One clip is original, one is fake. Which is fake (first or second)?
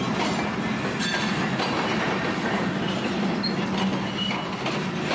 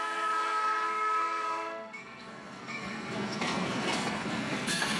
second